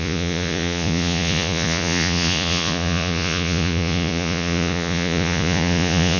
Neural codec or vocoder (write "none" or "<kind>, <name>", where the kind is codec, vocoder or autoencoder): vocoder, Vocos